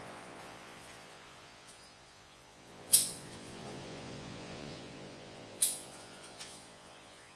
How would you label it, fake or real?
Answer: fake